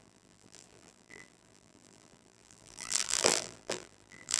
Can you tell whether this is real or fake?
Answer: fake